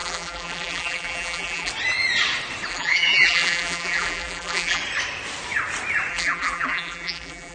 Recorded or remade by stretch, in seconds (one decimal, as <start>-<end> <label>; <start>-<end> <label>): 0.0-1.7 remade; 1.7-2.7 recorded; 2.7-4.8 remade; 4.8-6.1 recorded; 6.1-7.5 remade